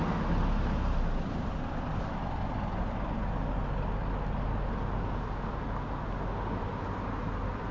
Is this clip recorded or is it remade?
recorded